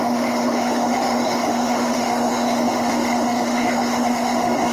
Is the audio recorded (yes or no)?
no